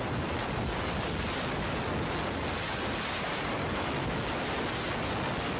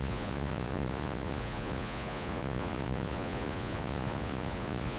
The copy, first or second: second